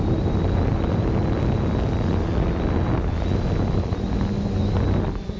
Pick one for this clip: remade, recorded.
recorded